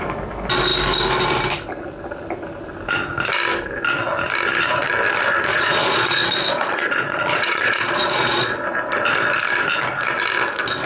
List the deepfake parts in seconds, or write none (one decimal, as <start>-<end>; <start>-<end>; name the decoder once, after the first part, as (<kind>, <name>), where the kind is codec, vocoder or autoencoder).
5.5-8.5 (vocoder, Vocos)